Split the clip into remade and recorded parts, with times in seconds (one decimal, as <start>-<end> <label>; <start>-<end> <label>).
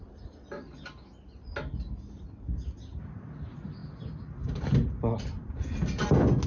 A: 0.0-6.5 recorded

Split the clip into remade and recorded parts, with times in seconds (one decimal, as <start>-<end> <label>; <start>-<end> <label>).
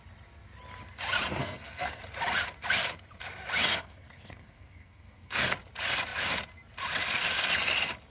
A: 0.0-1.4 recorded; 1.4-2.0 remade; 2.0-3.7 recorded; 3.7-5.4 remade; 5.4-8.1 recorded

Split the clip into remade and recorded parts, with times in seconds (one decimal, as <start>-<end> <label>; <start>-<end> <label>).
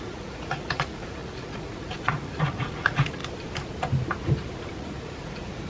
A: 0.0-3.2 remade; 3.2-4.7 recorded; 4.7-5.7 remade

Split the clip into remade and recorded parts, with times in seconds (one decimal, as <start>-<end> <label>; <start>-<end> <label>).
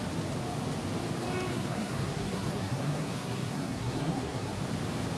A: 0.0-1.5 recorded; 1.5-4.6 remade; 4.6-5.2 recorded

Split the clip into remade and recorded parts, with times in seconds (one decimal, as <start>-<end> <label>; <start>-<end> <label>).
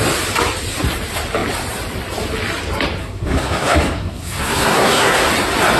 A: 0.0-3.0 recorded; 3.0-5.3 remade; 5.3-5.8 recorded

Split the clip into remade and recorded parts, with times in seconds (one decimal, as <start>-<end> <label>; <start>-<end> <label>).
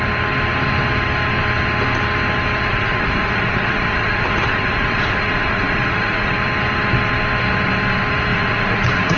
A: 0.0-2.7 recorded; 2.7-6.3 remade; 6.3-8.3 recorded; 8.3-9.2 remade